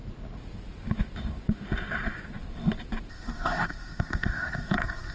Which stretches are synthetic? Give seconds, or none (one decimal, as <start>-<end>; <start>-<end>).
3.1-5.1